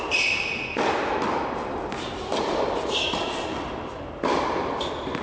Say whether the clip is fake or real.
real